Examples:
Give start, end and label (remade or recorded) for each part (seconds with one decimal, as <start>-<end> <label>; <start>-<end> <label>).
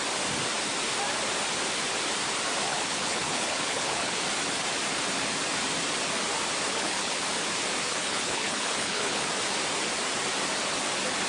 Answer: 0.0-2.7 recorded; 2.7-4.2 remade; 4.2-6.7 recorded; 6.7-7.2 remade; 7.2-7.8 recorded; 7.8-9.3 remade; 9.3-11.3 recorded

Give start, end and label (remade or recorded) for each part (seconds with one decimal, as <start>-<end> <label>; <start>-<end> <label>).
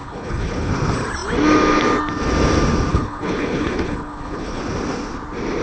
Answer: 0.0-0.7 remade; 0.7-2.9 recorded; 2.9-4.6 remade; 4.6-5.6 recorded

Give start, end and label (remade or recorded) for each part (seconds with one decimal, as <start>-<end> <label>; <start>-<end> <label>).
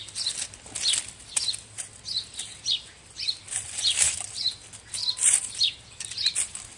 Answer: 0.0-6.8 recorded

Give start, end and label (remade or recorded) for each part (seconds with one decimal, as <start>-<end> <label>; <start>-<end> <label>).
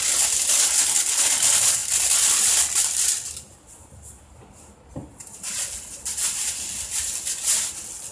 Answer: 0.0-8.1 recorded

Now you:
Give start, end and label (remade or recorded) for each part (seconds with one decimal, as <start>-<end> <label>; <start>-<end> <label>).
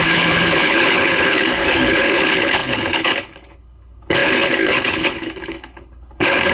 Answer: 0.0-6.5 remade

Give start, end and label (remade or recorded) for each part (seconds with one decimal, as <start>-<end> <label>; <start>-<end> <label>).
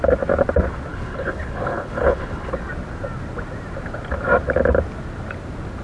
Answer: 0.0-0.9 recorded; 0.9-2.5 remade; 2.5-5.8 recorded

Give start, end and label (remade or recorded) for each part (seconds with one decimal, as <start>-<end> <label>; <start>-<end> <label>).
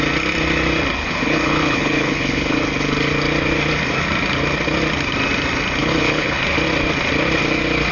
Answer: 0.0-1.0 recorded; 1.0-2.6 remade; 2.6-5.8 recorded; 5.8-6.4 remade; 6.4-7.9 recorded